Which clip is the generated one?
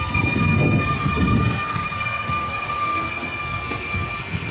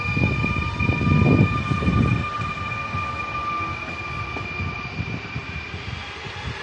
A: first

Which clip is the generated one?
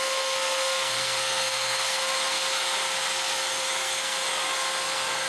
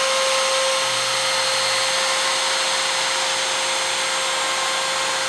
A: first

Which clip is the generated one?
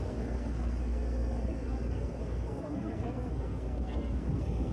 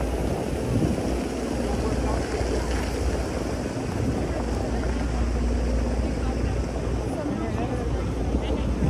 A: first